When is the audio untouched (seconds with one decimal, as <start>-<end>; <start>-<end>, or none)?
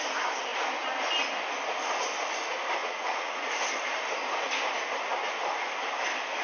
0.0-2.8; 3.5-6.4